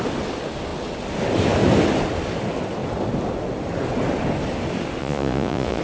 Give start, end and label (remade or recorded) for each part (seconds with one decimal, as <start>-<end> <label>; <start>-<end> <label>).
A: 0.0-5.0 recorded; 5.0-5.8 remade